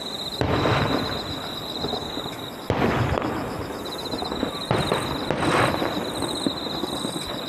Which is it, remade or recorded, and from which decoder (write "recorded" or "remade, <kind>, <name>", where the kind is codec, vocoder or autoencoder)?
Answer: recorded